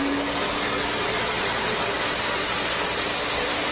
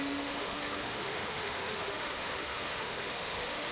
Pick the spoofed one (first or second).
second